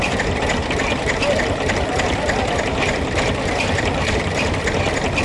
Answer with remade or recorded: recorded